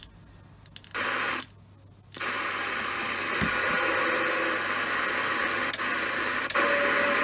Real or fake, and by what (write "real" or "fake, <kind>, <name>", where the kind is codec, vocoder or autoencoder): real